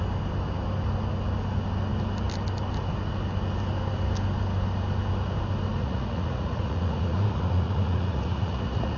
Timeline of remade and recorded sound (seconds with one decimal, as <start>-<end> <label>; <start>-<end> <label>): 0.0-5.8 recorded; 5.8-9.0 remade